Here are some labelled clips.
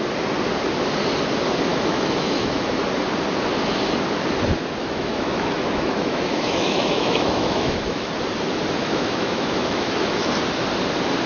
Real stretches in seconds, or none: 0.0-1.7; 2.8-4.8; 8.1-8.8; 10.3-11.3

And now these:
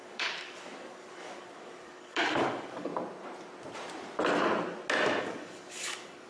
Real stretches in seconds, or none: 2.9-5.2

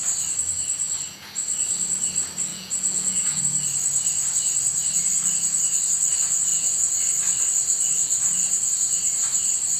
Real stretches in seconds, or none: 0.0-2.5; 3.4-6.5; 7.0-9.8

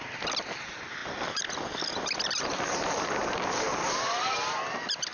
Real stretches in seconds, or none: 0.0-5.1

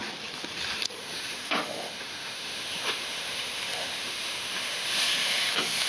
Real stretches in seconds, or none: 0.0-1.0

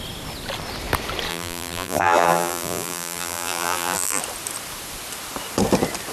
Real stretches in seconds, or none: 0.0-1.3; 4.2-6.1

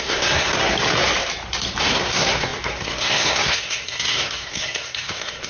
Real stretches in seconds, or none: 0.7-1.8